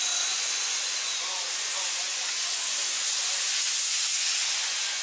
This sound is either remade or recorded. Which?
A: remade